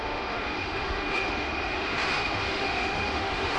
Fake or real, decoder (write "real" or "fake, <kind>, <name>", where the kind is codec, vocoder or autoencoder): fake, autoencoder, DAC-VAE